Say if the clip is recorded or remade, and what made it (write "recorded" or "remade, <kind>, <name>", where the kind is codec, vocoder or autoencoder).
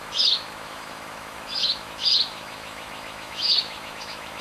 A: remade, autoencoder, DAC-VAE